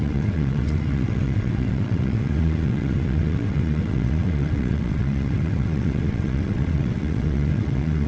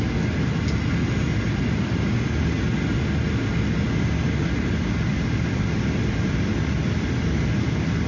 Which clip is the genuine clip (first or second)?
second